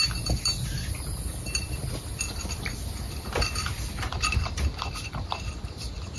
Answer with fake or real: fake